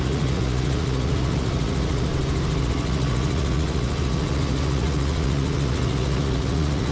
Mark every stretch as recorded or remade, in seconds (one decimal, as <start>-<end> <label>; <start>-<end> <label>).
0.0-2.1 remade; 2.1-2.6 recorded; 2.6-6.9 remade